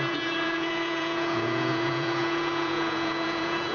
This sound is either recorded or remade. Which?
remade